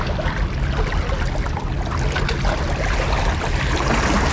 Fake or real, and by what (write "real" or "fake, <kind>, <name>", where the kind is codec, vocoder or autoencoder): real